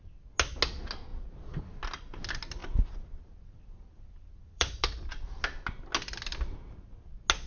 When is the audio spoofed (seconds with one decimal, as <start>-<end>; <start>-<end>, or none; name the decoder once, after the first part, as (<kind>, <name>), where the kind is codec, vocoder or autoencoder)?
2.6-5.4 (vocoder, BigVGAN v2)